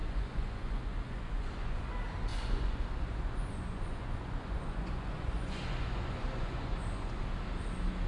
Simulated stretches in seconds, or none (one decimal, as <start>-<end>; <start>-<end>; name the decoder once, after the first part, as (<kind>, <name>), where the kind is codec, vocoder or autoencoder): 0.0-1.9 (vocoder, Vocos); 2.3-7.2